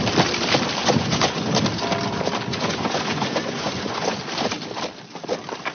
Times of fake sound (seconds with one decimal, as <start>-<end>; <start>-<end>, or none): 0.8-1.5; 2.5-4.2